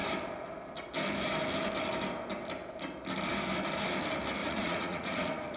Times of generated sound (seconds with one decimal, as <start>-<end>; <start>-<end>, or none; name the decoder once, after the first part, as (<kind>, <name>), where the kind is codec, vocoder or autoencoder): 4.4-5.6 (vocoder, Vocos)

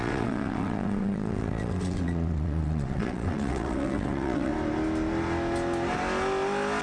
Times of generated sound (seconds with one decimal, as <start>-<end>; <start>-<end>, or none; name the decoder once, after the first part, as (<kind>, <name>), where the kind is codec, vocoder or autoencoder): 0.0-4.5 (vocoder, WaveNeXt)

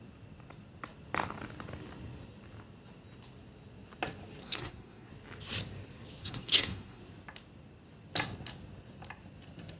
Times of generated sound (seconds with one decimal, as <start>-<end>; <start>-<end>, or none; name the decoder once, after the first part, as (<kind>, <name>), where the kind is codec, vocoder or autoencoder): 4.4-5.1 (codec, SNAC); 6.2-7.0